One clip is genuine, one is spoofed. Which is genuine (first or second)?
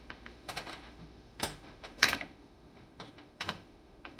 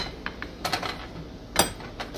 second